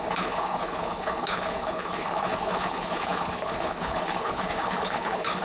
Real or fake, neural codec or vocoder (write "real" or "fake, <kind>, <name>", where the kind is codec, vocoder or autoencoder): fake, codec, HILCodec